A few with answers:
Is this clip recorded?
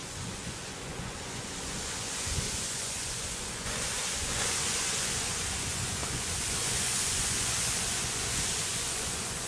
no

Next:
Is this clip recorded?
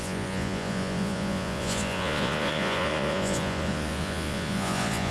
no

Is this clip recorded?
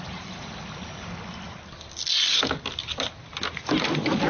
yes